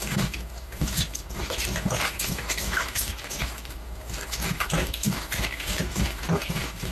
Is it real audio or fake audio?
fake